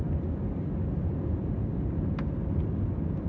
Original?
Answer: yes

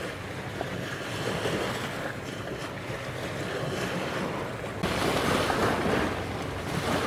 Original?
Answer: yes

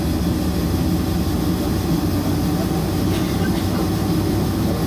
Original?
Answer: yes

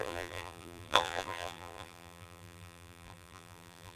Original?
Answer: no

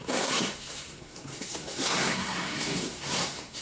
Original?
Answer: no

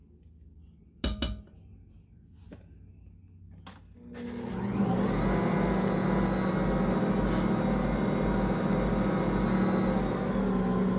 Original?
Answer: yes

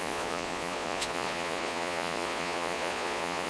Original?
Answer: no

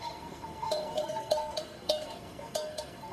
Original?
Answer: no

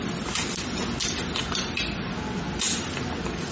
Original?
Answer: yes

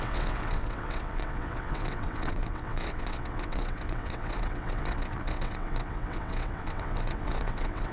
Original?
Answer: no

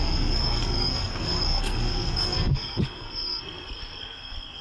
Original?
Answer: no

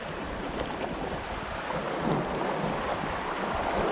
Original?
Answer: yes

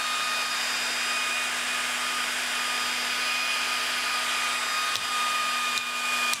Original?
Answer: yes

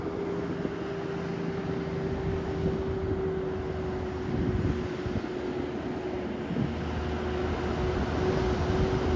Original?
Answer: yes